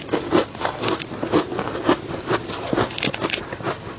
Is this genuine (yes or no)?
yes